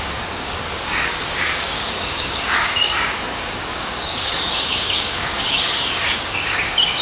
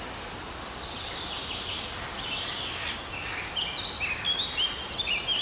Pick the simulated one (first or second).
first